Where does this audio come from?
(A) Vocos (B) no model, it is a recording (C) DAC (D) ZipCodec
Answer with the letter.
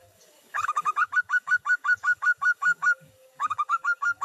C